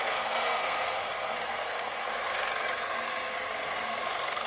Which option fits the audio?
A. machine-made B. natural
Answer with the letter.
A